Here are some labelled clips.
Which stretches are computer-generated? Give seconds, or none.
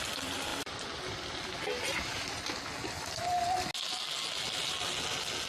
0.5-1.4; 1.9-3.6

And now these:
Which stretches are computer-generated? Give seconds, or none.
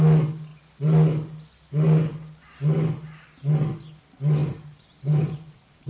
4.4-5.9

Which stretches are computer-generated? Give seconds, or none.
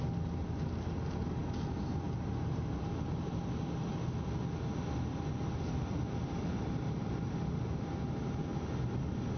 6.5-7.6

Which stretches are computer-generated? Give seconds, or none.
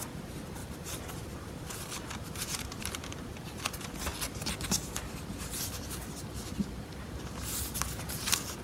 0.6-3.6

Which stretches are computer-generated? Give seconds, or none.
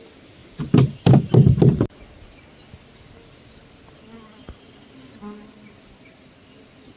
0.4-1.8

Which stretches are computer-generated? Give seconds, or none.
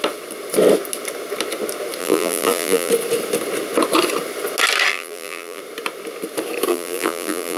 2.0-2.9; 4.9-5.6; 6.7-7.6